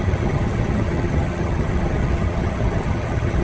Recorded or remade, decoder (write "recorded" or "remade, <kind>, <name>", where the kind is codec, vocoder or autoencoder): remade, vocoder, HiFi-GAN